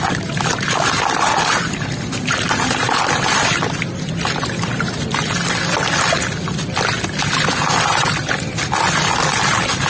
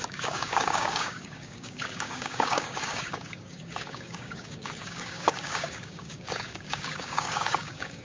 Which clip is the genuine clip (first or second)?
first